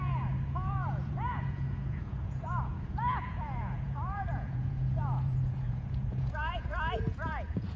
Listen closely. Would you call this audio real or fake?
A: fake